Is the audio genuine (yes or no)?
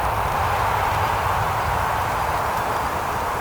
yes